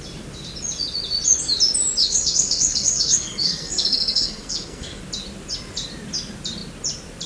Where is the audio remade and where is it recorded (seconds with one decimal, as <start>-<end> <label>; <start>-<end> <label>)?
0.0-2.0 recorded; 2.0-5.0 remade; 5.0-7.3 recorded